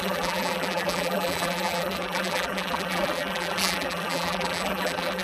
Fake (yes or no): yes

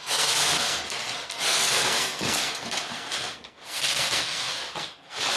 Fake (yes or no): yes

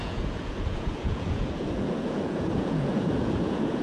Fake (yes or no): yes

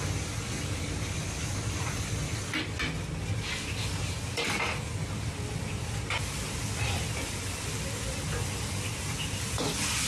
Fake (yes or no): no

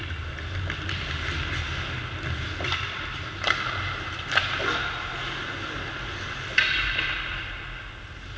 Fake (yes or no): no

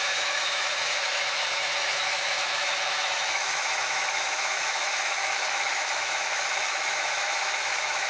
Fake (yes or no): yes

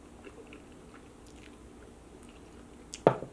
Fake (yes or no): no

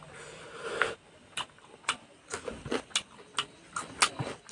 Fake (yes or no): no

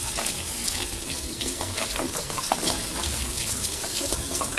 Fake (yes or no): yes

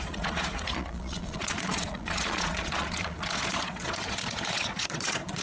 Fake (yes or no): yes